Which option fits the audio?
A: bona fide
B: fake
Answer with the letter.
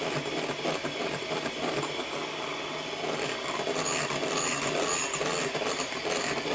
A